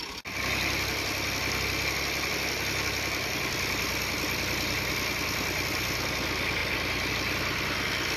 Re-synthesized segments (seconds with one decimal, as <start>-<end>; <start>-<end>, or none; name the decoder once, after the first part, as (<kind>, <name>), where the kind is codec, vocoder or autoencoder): none